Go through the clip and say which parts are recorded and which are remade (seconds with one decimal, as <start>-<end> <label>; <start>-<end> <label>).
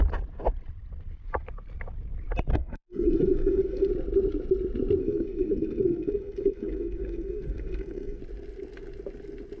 0.0-2.5 recorded; 2.5-3.9 remade; 3.9-5.0 recorded; 5.0-8.2 remade; 8.2-9.6 recorded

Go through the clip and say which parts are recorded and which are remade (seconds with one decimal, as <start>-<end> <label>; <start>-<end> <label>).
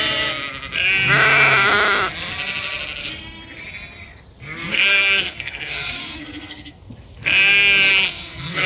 0.0-4.7 recorded; 4.7-6.9 remade; 6.9-7.9 recorded; 7.9-8.7 remade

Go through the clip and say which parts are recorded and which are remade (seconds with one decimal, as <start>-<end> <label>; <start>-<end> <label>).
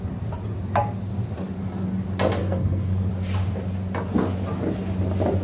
0.0-2.4 recorded; 2.4-3.1 remade; 3.1-5.4 recorded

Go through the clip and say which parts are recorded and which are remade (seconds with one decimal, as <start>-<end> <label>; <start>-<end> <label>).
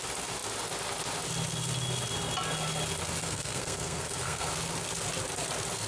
0.0-3.2 recorded; 3.2-4.5 remade; 4.5-5.9 recorded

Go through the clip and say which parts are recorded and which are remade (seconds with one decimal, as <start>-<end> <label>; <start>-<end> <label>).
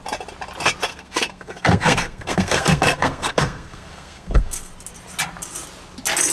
0.0-0.9 recorded; 0.9-4.7 remade; 4.7-6.3 recorded